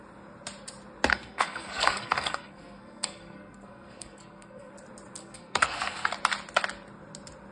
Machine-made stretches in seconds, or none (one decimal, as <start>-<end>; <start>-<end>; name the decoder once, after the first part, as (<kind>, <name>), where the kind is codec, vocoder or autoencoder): 1.1-4.7 (codec, SNAC); 5.2-6.1